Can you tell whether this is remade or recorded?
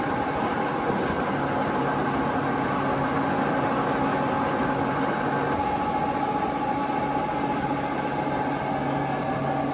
recorded